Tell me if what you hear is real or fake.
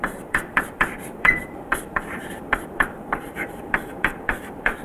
fake